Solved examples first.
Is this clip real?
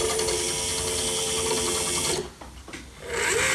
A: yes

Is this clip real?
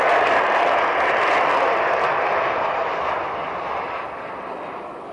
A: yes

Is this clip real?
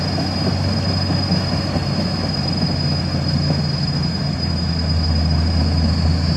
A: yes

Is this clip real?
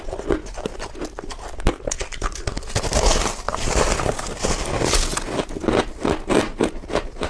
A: yes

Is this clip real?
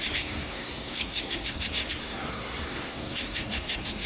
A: no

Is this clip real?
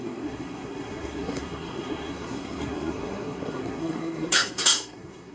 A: no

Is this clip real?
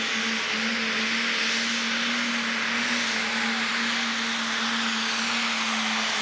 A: yes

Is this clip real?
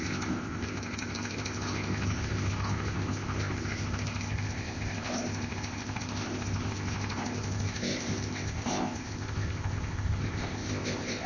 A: no